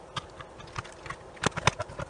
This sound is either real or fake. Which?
real